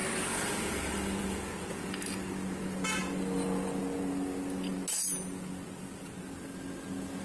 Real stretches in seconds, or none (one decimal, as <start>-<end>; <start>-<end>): 0.0-7.2